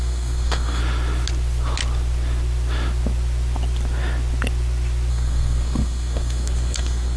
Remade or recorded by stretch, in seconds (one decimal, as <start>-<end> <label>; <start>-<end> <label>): 0.0-0.8 remade; 0.8-5.1 recorded; 5.1-7.2 remade